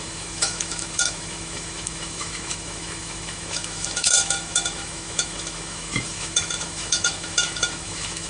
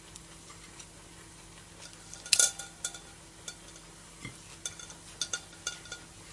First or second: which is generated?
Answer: first